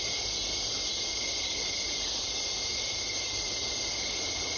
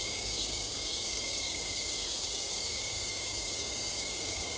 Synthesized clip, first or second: second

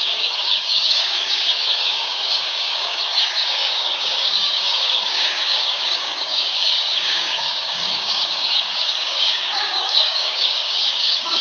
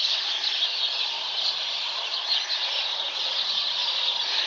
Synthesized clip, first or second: first